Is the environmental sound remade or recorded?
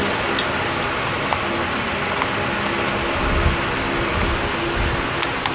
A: recorded